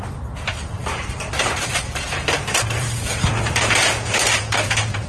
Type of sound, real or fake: fake